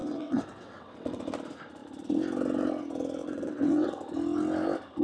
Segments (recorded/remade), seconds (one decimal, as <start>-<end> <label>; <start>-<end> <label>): 0.0-1.2 remade; 1.2-3.2 recorded; 3.2-4.0 remade; 4.0-5.0 recorded